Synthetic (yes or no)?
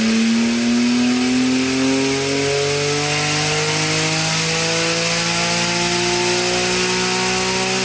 no